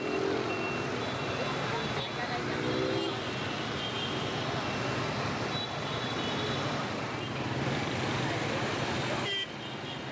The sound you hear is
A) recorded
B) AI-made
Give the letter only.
A